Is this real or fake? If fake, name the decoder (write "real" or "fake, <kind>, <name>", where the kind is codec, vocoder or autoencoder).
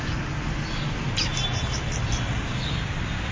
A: real